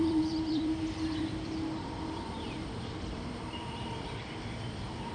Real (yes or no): no